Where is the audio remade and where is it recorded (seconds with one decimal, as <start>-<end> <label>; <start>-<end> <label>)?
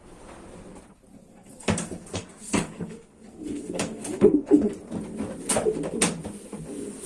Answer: 0.0-1.3 recorded; 1.3-4.7 remade; 4.7-7.1 recorded